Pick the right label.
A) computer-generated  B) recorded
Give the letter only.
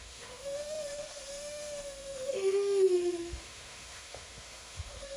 A